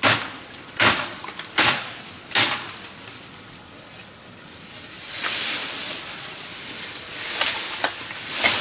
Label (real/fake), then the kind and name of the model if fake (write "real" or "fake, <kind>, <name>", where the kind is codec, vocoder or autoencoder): real